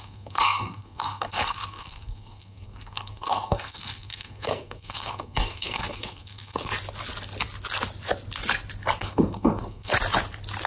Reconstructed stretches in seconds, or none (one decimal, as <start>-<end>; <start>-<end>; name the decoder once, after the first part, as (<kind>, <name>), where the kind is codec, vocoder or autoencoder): 0.0-6.7 (codec, SNAC); 9.0-9.9